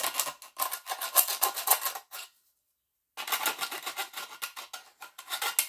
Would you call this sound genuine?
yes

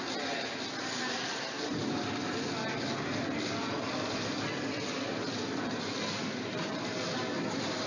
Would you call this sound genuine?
yes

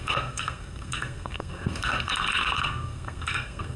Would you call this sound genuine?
no